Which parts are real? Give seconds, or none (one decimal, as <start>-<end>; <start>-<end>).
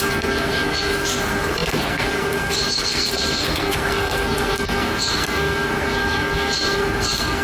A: none